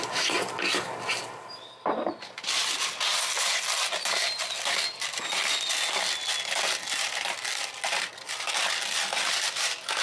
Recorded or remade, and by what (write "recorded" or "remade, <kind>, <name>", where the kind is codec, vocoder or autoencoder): recorded